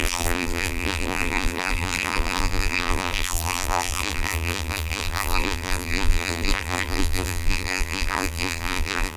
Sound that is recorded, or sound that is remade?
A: remade